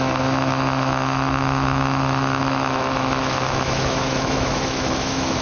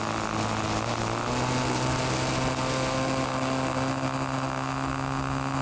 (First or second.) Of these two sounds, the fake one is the first